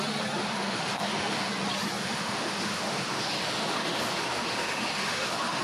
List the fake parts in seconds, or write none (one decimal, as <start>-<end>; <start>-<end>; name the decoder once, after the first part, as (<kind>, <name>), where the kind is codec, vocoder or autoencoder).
0.4-1.5 (autoencoder, DAC-VAE); 2.0-5.6

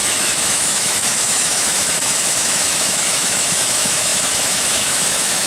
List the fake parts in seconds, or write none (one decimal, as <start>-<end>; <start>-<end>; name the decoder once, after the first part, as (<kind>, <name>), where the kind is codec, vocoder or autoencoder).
0.0-5.5 (autoencoder, DAC-VAE)

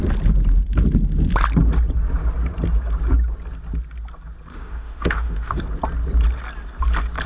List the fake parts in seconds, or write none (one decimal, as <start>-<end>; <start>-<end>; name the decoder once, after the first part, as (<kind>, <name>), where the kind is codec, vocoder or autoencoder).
4.5-5.6 (autoencoder, DAC-VAE)

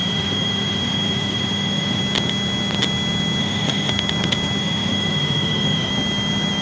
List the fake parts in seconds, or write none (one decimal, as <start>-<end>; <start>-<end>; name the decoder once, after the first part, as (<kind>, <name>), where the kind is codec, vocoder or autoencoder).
0.0-2.0 (autoencoder, DAC-VAE); 3.4-3.9; 4.6-5.9

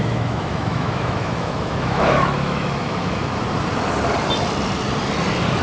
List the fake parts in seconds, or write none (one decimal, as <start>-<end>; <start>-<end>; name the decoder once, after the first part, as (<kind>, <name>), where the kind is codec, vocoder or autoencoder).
0.0-3.4 (autoencoder, DAC-VAE)

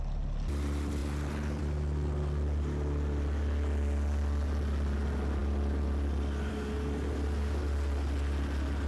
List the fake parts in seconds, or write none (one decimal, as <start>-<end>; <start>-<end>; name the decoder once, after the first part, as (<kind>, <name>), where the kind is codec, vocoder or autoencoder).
none

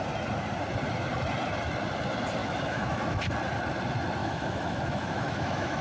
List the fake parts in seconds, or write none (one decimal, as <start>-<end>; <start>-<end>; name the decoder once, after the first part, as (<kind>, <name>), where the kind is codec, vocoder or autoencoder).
2.4-3.2 (autoencoder, DAC-VAE); 4.2-5.8